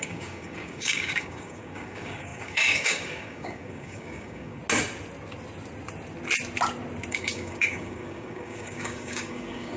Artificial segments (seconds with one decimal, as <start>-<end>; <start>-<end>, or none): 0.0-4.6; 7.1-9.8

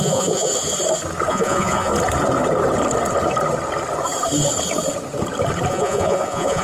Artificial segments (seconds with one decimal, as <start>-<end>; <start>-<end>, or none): 0.0-0.5; 1.3-1.9; 5.7-6.6

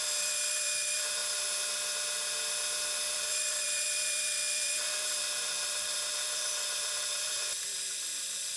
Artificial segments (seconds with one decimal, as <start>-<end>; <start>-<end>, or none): 0.0-1.2; 3.1-8.6

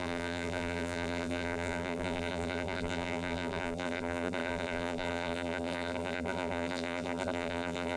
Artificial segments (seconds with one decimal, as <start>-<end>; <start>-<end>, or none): 0.0-8.0

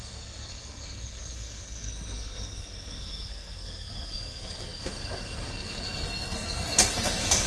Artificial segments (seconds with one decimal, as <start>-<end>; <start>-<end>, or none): 0.0-7.5